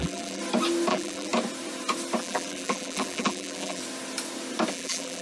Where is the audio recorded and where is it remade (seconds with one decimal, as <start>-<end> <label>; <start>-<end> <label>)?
0.0-0.4 remade; 0.4-0.9 recorded; 0.9-1.3 remade; 1.3-2.2 recorded; 2.2-3.8 remade; 3.8-4.7 recorded; 4.7-5.2 remade